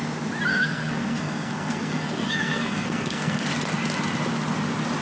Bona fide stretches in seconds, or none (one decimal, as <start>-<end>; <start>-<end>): 0.0-0.5; 3.5-5.0